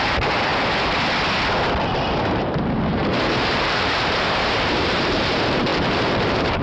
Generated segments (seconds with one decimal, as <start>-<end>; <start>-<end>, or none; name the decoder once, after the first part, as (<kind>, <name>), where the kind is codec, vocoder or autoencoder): 0.0-0.5 (vocoder, BigVGAN v2); 2.2-6.6